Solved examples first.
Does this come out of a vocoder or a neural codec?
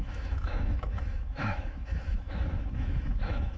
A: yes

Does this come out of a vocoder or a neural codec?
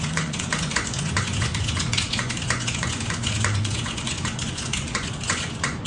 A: yes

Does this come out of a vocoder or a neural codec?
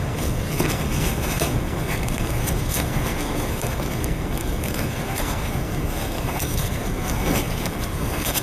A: yes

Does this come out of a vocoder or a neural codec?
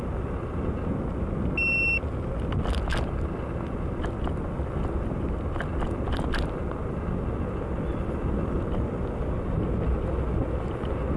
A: no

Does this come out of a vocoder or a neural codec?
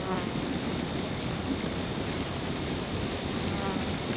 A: no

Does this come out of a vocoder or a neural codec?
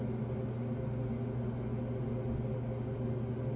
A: no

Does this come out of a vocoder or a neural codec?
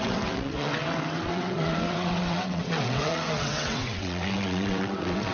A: yes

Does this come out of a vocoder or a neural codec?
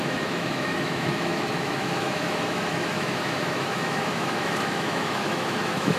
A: yes